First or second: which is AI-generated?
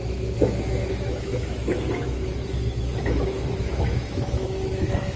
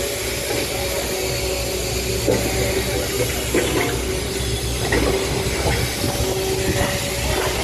first